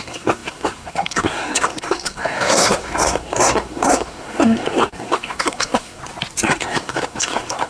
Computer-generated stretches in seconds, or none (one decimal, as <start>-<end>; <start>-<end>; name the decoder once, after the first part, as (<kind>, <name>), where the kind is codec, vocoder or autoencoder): 0.0-6.0 (codec, SNAC); 6.6-7.7